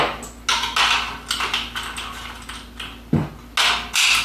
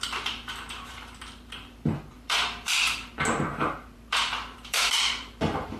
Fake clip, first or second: second